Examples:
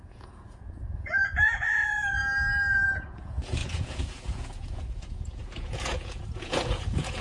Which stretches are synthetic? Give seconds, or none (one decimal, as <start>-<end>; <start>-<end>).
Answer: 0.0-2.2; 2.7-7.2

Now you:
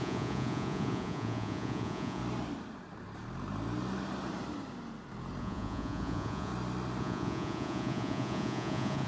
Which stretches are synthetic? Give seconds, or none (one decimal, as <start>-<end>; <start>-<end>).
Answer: 0.0-2.2; 5.4-6.5; 7.0-9.1

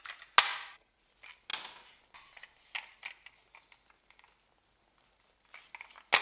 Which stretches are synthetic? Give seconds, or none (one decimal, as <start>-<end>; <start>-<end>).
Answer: 0.5-1.1